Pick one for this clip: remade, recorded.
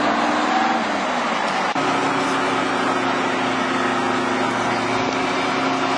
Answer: recorded